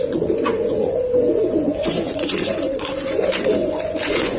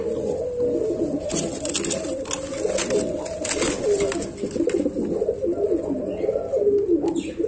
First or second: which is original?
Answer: second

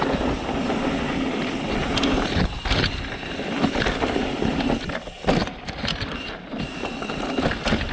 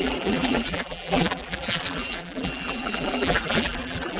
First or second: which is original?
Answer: first